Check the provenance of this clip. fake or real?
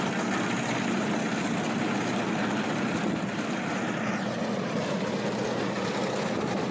real